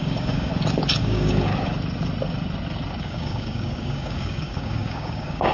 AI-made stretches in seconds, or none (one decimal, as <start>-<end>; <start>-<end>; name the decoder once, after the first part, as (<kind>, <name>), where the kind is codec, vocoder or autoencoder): 0.0-0.5 (codec, DAC); 1.0-1.5; 3.0-5.5